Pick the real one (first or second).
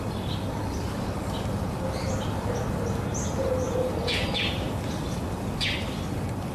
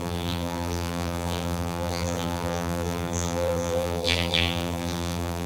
first